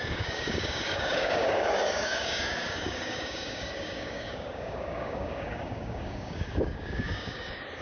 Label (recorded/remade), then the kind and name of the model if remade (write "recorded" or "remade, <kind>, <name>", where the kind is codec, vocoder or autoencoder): remade, codec, DAC